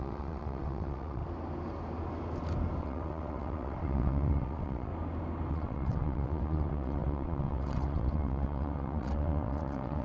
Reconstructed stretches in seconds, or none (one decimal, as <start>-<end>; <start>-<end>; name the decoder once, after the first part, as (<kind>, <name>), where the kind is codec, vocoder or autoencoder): 0.0-1.2 (vocoder, WaveNeXt); 2.8-4.9; 5.5-10.0